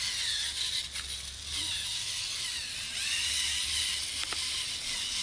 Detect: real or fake real